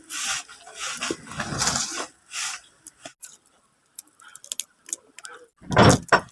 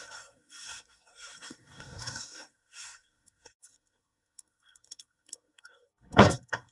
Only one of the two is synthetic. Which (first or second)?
second